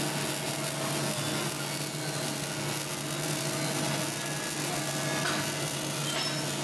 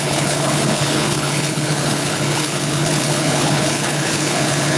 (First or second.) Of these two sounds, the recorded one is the first